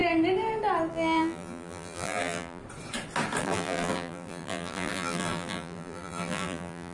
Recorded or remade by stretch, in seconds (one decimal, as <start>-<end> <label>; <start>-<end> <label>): 0.0-0.9 recorded; 0.9-2.6 remade; 2.6-3.4 recorded; 3.4-6.9 remade